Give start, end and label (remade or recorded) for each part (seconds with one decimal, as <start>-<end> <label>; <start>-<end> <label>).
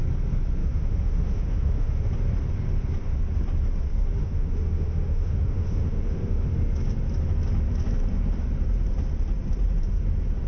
0.0-0.6 recorded; 0.6-2.1 remade; 2.1-4.2 recorded; 4.2-6.5 remade; 6.5-10.5 recorded